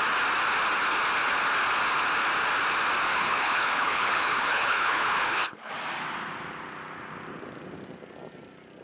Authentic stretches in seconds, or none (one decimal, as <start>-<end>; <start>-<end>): 0.0-3.1; 5.7-8.8